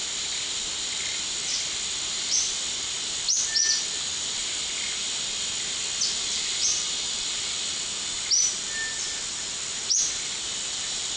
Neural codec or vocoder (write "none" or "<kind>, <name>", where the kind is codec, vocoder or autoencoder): none